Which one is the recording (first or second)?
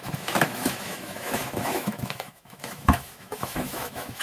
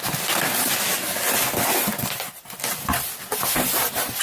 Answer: second